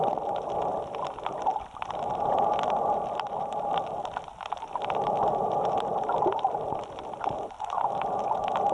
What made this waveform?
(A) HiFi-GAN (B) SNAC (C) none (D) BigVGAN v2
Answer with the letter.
D